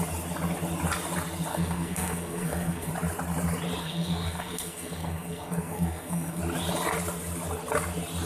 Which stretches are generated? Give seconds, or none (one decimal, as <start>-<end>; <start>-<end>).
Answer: 1.5-2.9; 3.8-6.4